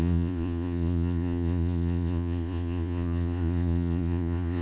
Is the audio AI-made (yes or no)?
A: yes